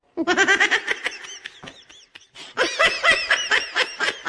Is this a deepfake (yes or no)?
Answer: no